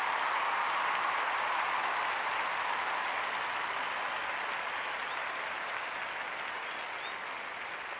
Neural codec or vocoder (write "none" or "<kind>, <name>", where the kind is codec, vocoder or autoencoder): none